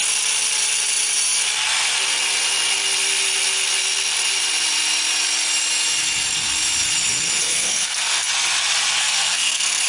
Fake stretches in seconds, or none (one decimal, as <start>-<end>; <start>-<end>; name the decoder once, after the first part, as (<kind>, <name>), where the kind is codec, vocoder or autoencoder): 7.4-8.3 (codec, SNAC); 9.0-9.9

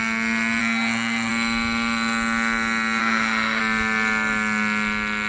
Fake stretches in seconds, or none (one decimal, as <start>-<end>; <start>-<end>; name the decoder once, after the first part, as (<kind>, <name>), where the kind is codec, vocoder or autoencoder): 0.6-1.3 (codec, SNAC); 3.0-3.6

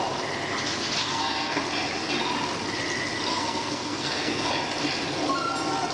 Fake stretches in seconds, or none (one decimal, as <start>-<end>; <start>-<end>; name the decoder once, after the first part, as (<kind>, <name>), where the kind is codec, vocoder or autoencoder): 1.0-1.6 (codec, SNAC); 3.3-4.5

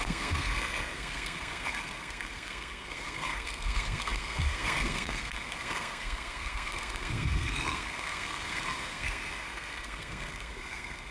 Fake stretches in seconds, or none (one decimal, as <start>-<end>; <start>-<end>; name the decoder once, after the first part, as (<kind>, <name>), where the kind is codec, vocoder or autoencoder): 0.0-11.1 (codec, SNAC)

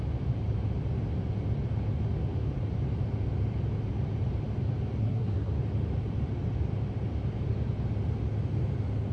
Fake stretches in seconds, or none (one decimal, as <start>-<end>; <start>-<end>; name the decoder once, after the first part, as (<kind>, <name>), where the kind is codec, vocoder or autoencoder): 5.0-5.5 (codec, SNAC)